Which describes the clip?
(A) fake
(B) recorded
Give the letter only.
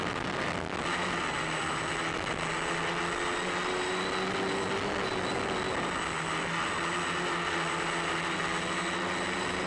B